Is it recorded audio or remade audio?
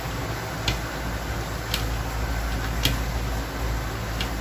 recorded